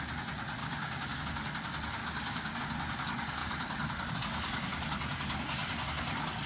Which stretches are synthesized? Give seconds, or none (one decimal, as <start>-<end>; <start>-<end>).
0.6-1.2; 2.0-2.6